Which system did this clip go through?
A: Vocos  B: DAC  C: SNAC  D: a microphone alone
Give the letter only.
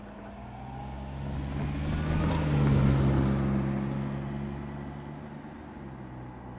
D